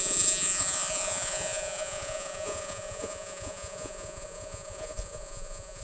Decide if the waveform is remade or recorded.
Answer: remade